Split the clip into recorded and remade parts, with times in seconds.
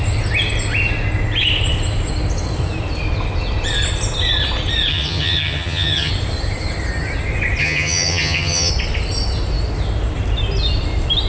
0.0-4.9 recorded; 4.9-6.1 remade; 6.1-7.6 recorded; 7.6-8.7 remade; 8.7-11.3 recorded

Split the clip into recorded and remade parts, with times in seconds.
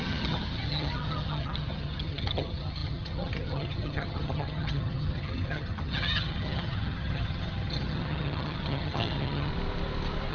0.0-9.5 remade; 9.5-10.3 recorded